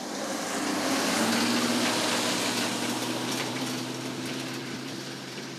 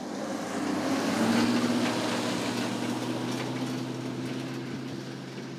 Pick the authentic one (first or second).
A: second